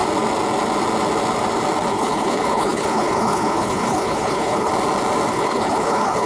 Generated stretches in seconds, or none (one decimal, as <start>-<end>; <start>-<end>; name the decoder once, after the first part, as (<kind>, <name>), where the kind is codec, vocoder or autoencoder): 1.9-4.7 (codec, HILCodec); 5.3-6.3